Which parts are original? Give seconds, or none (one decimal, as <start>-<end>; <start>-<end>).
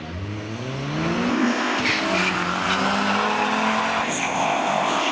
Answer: 0.0-1.3; 1.8-4.0